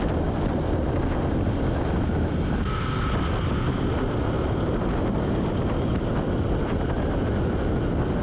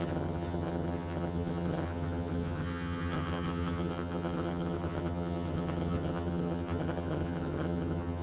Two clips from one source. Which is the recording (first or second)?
first